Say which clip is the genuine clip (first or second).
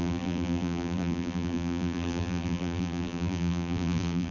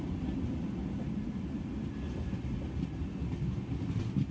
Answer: second